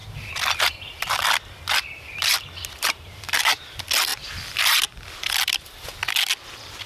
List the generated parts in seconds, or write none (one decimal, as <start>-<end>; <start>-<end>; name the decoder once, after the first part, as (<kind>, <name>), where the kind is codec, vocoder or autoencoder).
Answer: 0.0-3.5 (vocoder, BigVGAN v2); 4.1-5.8